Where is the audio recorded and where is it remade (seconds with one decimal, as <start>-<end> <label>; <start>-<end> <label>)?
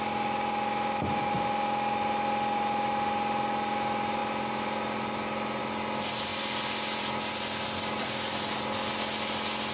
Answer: 0.0-9.7 recorded